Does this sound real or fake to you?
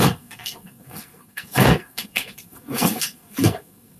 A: fake